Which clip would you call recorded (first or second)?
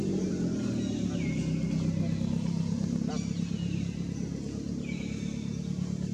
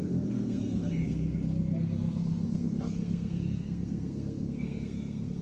first